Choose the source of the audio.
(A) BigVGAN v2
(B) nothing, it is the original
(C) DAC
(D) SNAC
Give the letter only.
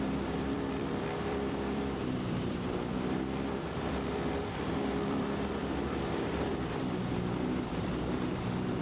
A